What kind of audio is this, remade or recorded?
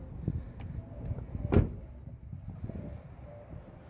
recorded